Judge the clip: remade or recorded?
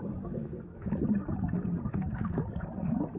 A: recorded